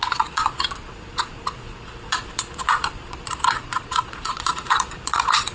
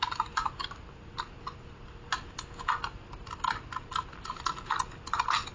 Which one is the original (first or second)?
second